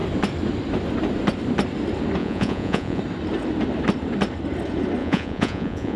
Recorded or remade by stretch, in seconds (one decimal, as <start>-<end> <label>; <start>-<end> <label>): 0.0-2.2 recorded; 2.2-3.0 remade; 3.0-5.0 recorded; 5.0-6.0 remade